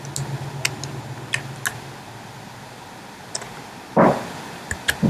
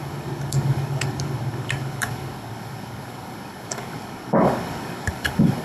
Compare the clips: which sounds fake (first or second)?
second